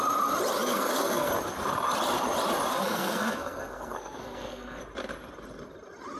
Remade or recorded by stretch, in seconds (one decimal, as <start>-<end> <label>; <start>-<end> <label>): 0.0-0.7 recorded; 0.7-1.3 remade; 1.3-2.7 recorded; 2.7-4.8 remade; 4.8-6.2 recorded